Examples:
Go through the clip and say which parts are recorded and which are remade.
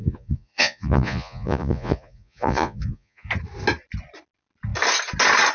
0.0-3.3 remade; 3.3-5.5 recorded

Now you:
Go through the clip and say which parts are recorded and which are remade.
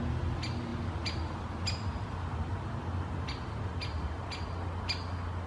0.0-5.5 recorded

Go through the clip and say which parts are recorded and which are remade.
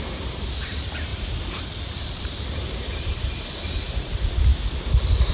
0.0-1.1 recorded; 1.1-3.3 remade; 3.3-5.3 recorded